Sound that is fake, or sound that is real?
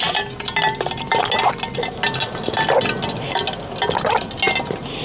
real